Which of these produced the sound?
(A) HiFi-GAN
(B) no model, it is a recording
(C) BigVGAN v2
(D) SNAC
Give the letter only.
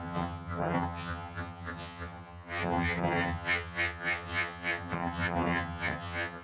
A